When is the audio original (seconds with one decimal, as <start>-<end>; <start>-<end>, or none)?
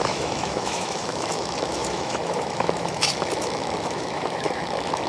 none